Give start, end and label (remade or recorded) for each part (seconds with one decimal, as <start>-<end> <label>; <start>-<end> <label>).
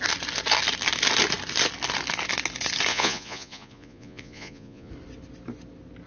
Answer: 0.0-2.9 recorded; 2.9-4.9 remade; 4.9-6.1 recorded